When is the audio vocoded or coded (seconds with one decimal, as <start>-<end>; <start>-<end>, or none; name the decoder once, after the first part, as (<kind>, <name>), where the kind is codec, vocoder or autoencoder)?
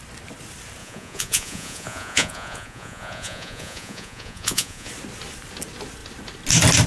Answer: 0.8-4.9 (vocoder, Vocos)